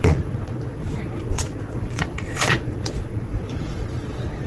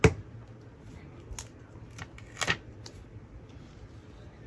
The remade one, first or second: first